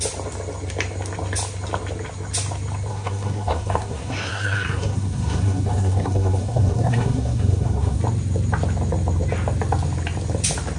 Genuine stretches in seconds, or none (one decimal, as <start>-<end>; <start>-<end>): 0.0-2.9; 8.0-10.8